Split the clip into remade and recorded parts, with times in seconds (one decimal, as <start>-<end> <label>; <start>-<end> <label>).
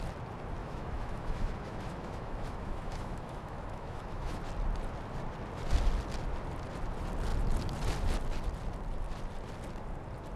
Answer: 0.0-0.6 recorded; 0.6-4.4 remade; 4.4-10.4 recorded